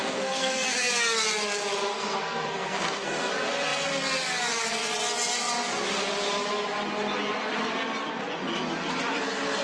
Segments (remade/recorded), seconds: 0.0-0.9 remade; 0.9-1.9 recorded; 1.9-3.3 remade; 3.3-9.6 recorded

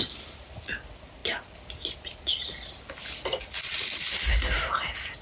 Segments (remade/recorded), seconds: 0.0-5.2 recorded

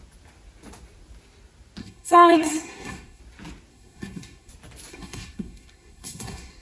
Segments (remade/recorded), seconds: 0.0-1.8 recorded; 1.8-3.2 remade; 3.2-3.7 recorded; 3.7-4.5 remade; 4.5-4.9 recorded; 4.9-6.6 remade

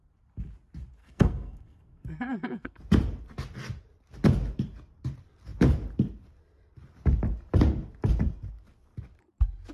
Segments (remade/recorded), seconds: 0.0-1.0 recorded; 1.0-2.8 remade; 2.8-9.7 recorded

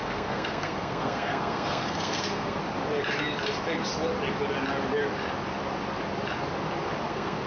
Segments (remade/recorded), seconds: 0.0-2.6 remade; 2.6-7.1 recorded; 7.1-7.5 remade